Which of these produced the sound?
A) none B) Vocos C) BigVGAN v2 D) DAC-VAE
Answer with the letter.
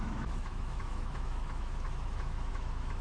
D